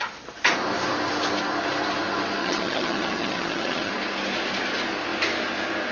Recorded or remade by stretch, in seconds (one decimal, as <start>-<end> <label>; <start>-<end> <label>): 0.0-2.4 recorded; 2.4-3.9 remade; 3.9-5.9 recorded

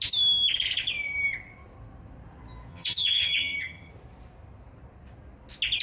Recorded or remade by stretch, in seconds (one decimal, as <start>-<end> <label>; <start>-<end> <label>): 0.0-2.7 recorded; 2.7-3.9 remade; 3.9-5.8 recorded

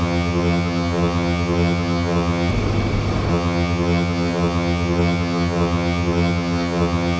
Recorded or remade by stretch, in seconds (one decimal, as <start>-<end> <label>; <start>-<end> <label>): 0.0-2.5 remade; 2.5-3.3 recorded; 3.3-7.2 remade